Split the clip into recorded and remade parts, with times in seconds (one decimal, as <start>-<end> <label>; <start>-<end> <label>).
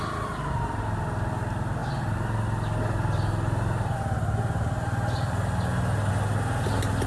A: 0.0-7.1 recorded